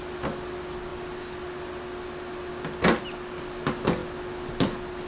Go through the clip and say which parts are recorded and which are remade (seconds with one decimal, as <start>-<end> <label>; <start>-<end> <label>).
0.0-5.1 recorded